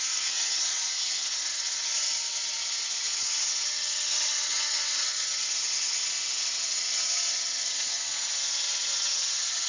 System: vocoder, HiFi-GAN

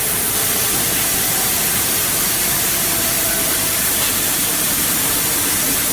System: vocoder, BigVGAN v2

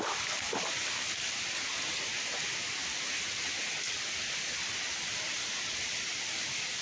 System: none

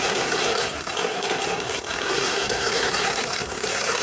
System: codec, SNAC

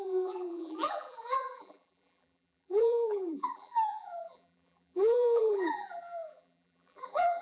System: vocoder, BigVGAN v2